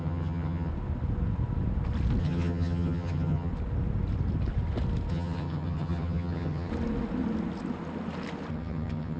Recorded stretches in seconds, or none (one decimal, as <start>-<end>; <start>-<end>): 0.7-2.2; 3.5-5.1; 6.7-8.5